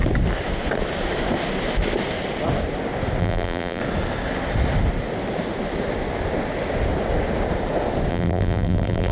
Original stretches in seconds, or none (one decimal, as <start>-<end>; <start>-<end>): 0.0-3.2; 3.8-8.1